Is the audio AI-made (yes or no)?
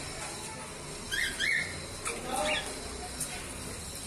no